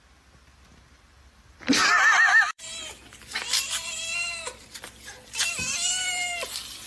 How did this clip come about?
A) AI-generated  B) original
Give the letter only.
A